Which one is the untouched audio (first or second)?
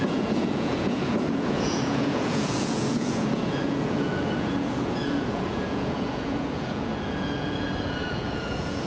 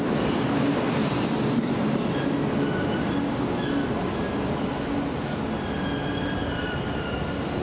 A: second